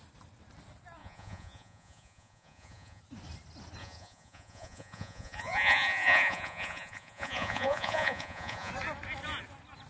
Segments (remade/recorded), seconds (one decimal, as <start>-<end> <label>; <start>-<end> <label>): 0.0-1.0 recorded; 1.0-3.0 remade; 3.0-3.8 recorded; 3.8-8.7 remade; 8.7-9.9 recorded

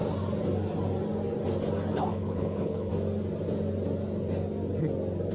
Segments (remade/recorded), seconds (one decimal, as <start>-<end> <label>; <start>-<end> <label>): 0.0-2.1 recorded; 2.1-2.9 remade; 2.9-5.3 recorded

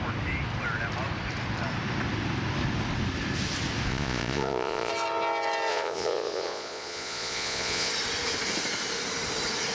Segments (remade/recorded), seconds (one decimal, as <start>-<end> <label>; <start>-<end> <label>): 0.0-3.9 recorded; 3.9-4.9 remade; 4.9-5.7 recorded; 5.7-7.9 remade; 7.9-9.7 recorded

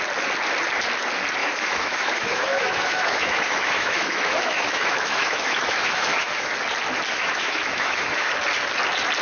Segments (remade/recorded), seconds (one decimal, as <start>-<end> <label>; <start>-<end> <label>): 0.0-1.4 recorded; 1.4-6.5 remade; 6.5-7.1 recorded; 7.1-8.3 remade; 8.3-9.2 recorded

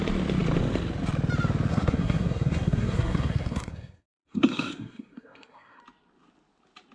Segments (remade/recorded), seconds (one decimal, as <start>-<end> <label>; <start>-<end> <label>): 0.0-1.7 recorded; 1.7-5.8 remade; 5.8-6.9 recorded

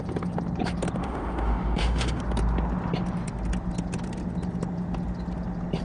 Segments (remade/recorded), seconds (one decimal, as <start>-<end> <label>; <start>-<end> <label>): 0.0-1.0 recorded; 1.0-2.2 remade; 2.2-5.8 recorded

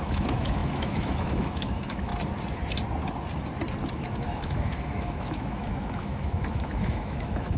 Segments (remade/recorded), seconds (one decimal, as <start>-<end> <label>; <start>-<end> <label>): 0.0-2.1 remade; 2.1-3.9 recorded; 3.9-7.6 remade